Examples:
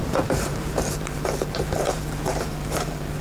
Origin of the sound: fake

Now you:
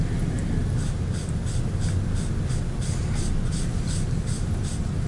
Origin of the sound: real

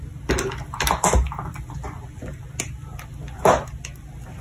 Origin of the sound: real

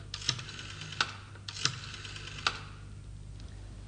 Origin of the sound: real